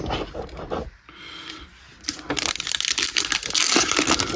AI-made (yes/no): no